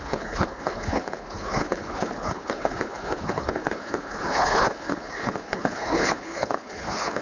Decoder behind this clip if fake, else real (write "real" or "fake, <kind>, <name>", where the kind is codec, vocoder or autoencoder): fake, codec, HILCodec